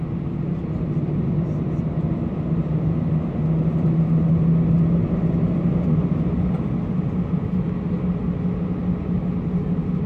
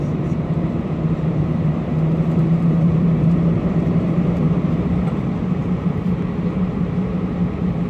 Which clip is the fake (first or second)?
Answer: second